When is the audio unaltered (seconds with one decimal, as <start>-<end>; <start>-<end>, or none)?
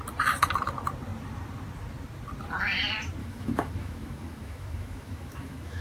0.0-3.2